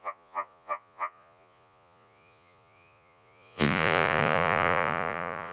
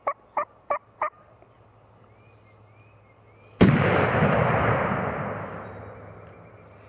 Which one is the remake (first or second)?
first